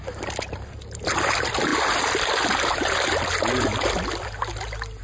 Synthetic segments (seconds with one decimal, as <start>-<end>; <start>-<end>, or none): none